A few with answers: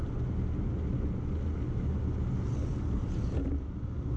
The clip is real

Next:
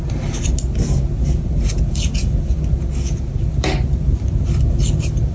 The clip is real